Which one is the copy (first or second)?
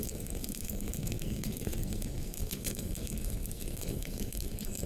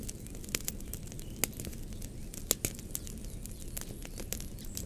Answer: first